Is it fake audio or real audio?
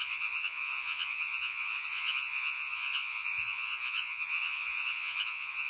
fake